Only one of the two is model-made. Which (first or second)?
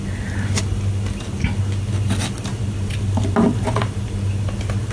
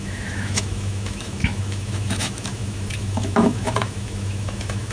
second